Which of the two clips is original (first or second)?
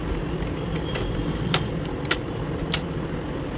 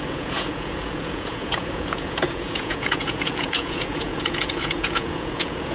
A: first